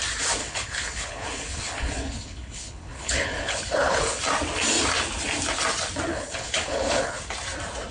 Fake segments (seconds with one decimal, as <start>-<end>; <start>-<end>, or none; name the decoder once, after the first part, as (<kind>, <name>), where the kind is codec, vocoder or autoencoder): 0.4-4.2 (codec, HILCodec); 6.1-7.2